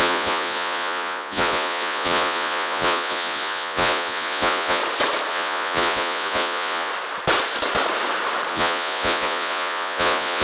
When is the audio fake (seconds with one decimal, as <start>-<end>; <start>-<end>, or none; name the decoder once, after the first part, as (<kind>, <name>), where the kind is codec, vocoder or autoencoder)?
0.0-4.8 (vocoder, Vocos); 5.3-6.9; 8.5-10.4